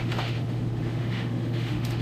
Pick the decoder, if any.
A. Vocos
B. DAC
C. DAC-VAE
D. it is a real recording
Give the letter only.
C